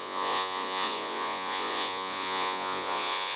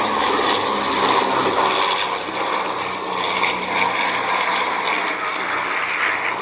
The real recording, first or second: second